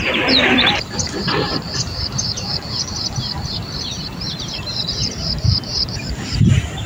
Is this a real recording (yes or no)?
no